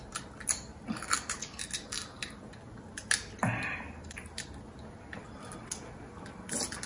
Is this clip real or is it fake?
real